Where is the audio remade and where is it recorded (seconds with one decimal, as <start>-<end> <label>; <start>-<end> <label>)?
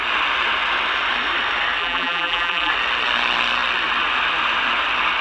0.0-1.8 recorded; 1.8-2.7 remade; 2.7-5.2 recorded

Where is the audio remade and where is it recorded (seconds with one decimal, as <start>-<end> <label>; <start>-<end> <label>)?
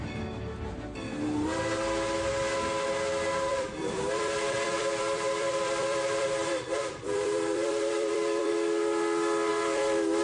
0.0-3.5 recorded; 3.5-8.5 remade; 8.5-9.5 recorded; 9.5-10.2 remade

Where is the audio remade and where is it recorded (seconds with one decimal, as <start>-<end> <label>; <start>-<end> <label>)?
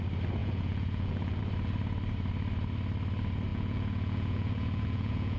0.0-0.4 recorded; 0.4-1.4 remade; 1.4-3.5 recorded; 3.5-5.4 remade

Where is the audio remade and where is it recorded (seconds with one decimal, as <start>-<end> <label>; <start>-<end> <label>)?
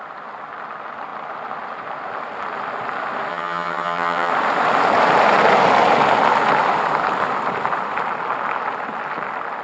0.0-3.3 recorded; 3.3-4.3 remade; 4.3-9.6 recorded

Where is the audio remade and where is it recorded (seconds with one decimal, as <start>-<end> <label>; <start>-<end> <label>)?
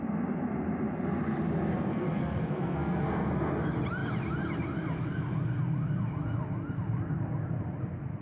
0.0-1.9 recorded; 1.9-3.5 remade; 3.5-8.2 recorded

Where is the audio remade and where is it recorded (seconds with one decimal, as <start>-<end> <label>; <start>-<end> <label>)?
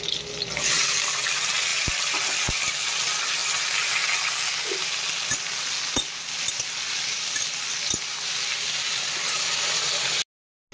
0.0-10.7 recorded